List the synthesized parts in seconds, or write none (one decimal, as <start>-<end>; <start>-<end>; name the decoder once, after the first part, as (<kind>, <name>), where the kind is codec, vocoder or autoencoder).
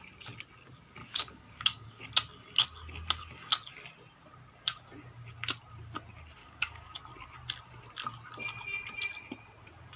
1.0-2.1 (codec, DAC); 6.4-7.0